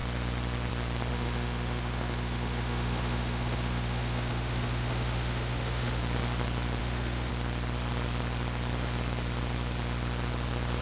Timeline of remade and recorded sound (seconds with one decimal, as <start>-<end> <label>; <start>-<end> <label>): 0.0-1.1 recorded; 1.1-6.0 remade; 6.0-6.8 recorded; 6.8-7.3 remade; 7.3-10.8 recorded